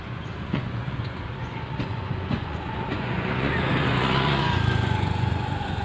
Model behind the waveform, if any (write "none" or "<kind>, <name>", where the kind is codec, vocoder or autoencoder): vocoder, Vocos